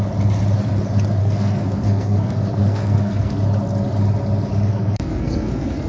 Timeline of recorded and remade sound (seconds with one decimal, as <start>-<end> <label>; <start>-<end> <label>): 0.0-1.2 recorded; 1.2-3.3 remade; 3.3-4.7 recorded; 4.7-5.9 remade